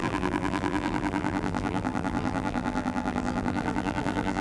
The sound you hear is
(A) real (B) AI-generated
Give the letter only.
B